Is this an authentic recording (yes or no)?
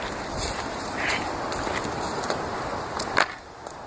yes